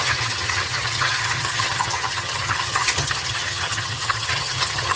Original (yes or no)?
no